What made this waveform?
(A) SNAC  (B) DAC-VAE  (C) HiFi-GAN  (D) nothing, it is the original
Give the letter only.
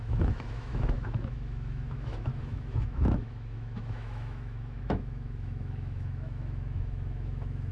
B